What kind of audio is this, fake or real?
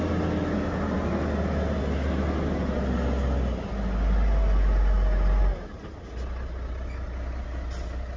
real